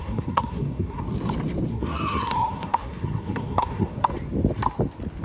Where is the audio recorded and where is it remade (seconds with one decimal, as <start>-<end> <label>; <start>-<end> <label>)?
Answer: 0.0-1.0 remade; 1.0-1.7 recorded; 1.7-4.0 remade; 4.0-5.2 recorded